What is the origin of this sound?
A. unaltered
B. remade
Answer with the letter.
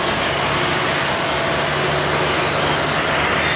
A